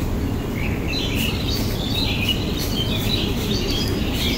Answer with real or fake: real